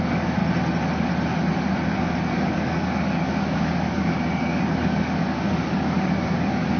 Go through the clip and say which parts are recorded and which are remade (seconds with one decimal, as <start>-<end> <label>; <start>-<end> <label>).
0.0-0.4 remade; 0.4-2.3 recorded; 2.3-6.8 remade